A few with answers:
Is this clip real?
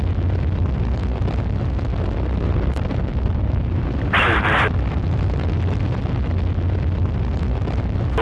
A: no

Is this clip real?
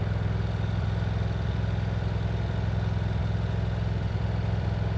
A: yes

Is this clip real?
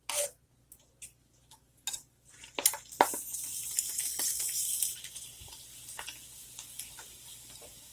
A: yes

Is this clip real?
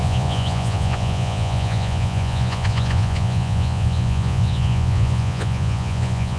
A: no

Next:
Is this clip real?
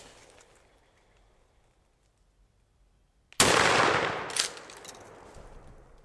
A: yes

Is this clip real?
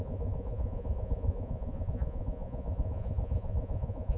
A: no